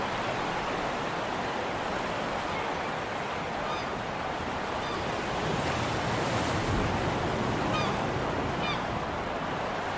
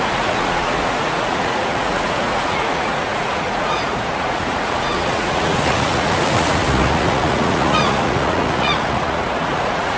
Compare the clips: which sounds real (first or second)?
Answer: first